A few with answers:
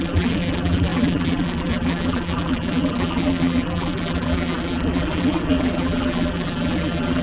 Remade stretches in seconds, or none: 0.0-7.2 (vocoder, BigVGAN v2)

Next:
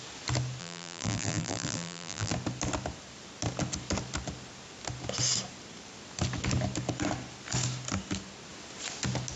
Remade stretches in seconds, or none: 0.6-2.3 (vocoder, BigVGAN v2)

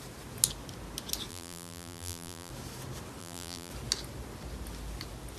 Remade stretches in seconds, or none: 1.3-2.5 (vocoder, BigVGAN v2); 3.2-3.7

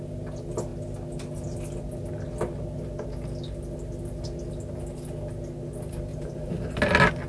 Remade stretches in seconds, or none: 6.1-6.8 (vocoder, BigVGAN v2)

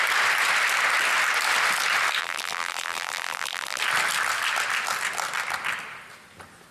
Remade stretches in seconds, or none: 2.2-3.8 (vocoder, BigVGAN v2)